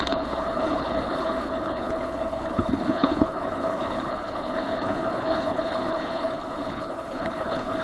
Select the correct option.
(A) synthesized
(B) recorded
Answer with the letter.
A